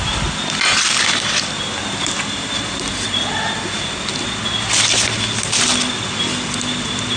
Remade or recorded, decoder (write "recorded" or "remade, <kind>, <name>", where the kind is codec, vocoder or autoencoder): recorded